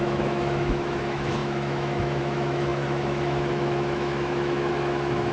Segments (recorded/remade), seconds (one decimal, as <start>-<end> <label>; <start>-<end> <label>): 0.0-5.3 remade

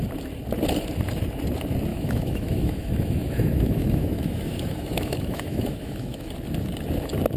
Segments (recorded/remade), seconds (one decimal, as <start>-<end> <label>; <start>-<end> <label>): 0.0-1.9 recorded; 1.9-6.3 remade; 6.3-7.4 recorded

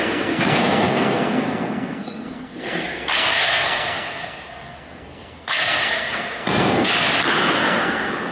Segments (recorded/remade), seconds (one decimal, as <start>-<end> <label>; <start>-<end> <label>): 0.0-6.9 remade; 6.9-7.4 recorded; 7.4-8.3 remade

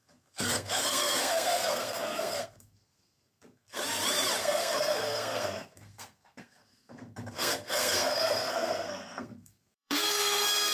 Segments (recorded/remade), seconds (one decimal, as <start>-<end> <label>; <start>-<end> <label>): 0.0-3.8 remade; 3.8-4.4 recorded; 4.4-10.7 remade

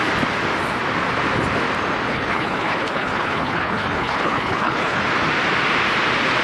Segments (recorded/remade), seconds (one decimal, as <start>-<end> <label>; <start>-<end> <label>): 0.0-2.1 recorded; 2.1-5.0 remade; 5.0-6.4 recorded

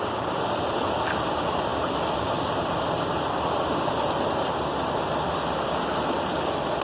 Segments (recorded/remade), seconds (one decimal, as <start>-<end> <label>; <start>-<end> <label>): 0.0-6.8 recorded

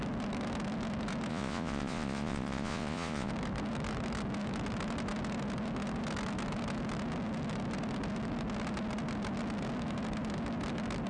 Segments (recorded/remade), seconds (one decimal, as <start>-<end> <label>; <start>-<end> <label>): 0.0-1.3 recorded; 1.3-3.3 remade; 3.3-11.1 recorded

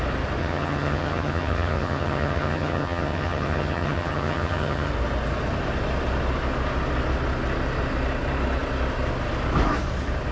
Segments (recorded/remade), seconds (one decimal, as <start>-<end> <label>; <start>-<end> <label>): 0.0-0.4 recorded; 0.4-4.9 remade; 4.9-10.3 recorded